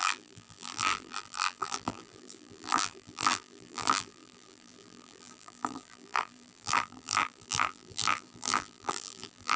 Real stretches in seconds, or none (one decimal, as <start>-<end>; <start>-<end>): none